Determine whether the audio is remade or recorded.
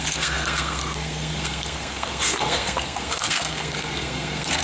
remade